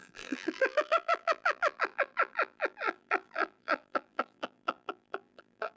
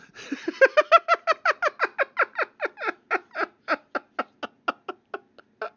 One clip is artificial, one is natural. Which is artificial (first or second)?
first